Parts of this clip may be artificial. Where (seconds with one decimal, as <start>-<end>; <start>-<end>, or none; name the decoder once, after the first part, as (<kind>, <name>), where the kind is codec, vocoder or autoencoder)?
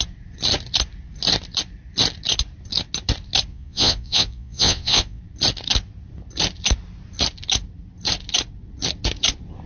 3.5-5.2 (vocoder, Vocos)